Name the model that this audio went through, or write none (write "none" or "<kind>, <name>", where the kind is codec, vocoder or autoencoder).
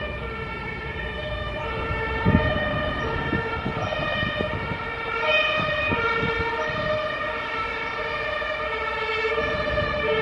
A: vocoder, BigVGAN v2